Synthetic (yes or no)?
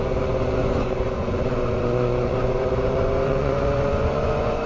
yes